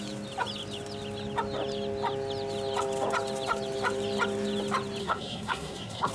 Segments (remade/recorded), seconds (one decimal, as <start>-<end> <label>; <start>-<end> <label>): 0.0-5.0 recorded; 5.0-6.1 remade